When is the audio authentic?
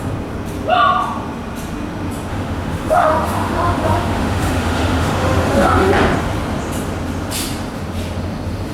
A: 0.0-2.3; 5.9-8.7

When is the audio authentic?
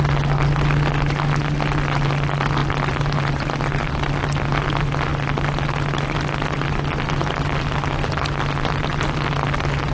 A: 0.0-9.9